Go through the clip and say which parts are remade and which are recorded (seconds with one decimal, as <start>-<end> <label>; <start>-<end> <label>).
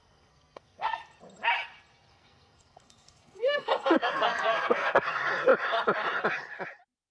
0.0-1.0 remade; 1.0-2.1 recorded; 2.1-5.1 remade; 5.1-7.1 recorded